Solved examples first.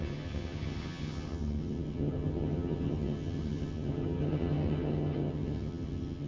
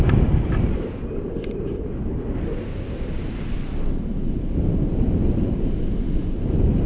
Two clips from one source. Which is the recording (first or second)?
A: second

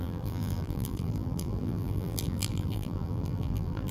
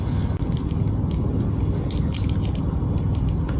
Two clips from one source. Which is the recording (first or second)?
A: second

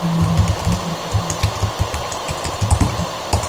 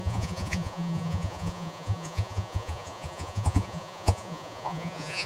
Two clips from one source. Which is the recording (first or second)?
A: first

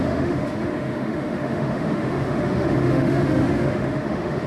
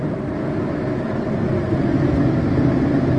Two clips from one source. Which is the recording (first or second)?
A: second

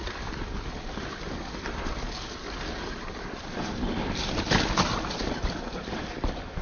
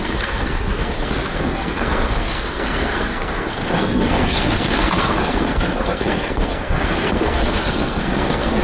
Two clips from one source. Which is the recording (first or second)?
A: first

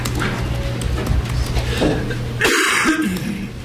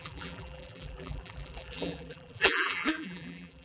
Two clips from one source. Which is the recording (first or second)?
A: first